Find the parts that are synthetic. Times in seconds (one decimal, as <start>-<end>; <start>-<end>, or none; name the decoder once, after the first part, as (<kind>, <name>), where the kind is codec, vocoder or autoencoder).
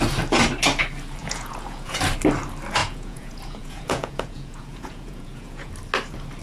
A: 1.2-2.0 (vocoder, Vocos); 2.8-5.7